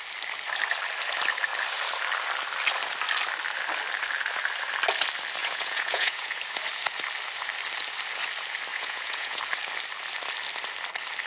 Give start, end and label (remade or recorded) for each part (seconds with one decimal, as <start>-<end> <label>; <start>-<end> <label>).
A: 0.0-5.4 recorded; 5.4-6.4 remade; 6.4-8.7 recorded; 8.7-9.4 remade; 9.4-11.3 recorded

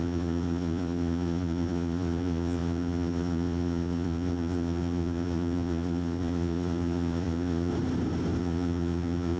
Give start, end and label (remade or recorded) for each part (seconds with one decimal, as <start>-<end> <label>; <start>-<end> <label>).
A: 0.0-7.7 remade; 7.7-8.4 recorded; 8.4-9.4 remade

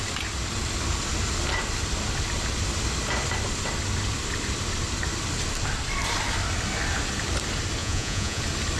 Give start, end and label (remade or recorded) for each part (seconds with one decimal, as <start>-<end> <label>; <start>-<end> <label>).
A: 0.0-7.8 recorded; 7.8-8.4 remade; 8.4-8.8 recorded

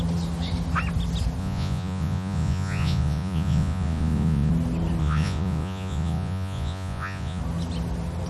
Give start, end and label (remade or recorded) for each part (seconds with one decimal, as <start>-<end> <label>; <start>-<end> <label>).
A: 0.0-1.4 recorded; 1.4-4.5 remade; 4.5-5.0 recorded; 5.0-7.4 remade; 7.4-8.3 recorded

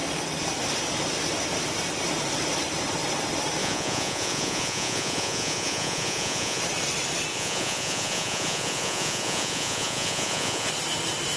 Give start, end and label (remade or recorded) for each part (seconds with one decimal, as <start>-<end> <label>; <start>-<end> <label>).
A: 0.0-3.6 recorded; 3.6-6.6 remade; 6.6-7.3 recorded; 7.3-10.7 remade; 10.7-11.4 recorded